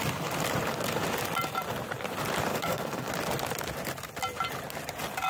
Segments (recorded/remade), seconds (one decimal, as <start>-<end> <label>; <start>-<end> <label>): 0.0-2.5 recorded; 2.5-3.1 remade; 3.1-5.3 recorded